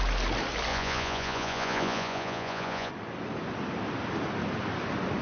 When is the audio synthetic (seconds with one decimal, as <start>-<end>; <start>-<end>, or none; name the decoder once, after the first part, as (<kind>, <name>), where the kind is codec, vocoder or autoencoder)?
0.7-2.9 (vocoder, Vocos)